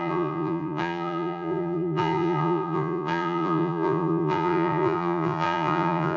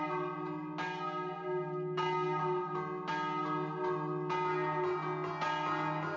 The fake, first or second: first